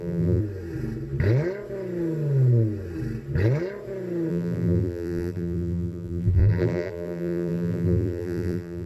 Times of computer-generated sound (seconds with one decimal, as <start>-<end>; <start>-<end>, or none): 0.0-0.4; 4.3-8.9